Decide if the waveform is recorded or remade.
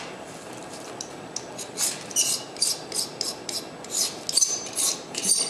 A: recorded